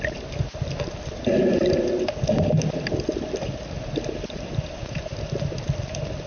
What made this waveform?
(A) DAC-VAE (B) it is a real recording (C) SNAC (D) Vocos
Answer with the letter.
B